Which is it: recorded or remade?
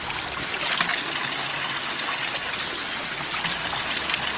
recorded